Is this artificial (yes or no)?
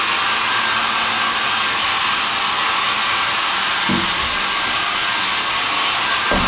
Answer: no